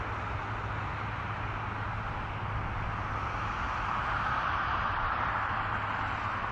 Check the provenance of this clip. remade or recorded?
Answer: recorded